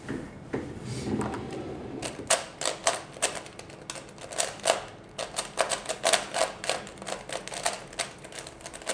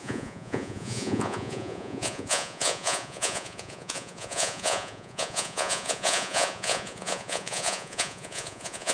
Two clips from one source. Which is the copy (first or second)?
second